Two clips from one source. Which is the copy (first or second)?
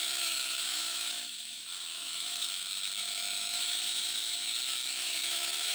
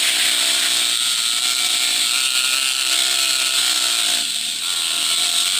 first